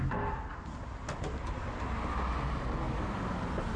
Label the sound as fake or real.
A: real